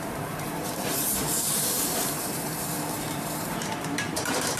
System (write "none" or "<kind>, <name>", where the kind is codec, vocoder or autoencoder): vocoder, BigVGAN v2